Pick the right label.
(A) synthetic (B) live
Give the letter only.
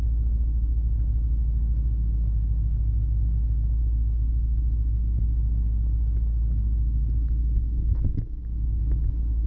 B